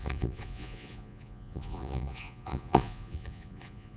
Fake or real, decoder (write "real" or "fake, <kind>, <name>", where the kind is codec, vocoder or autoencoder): fake, vocoder, Vocos